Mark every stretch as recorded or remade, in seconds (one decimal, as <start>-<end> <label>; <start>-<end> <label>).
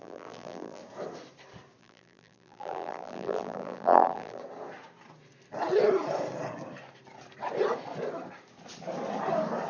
0.0-0.8 remade; 0.8-1.8 recorded; 1.8-4.4 remade; 4.4-9.7 recorded